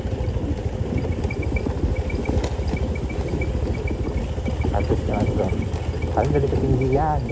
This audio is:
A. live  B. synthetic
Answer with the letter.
A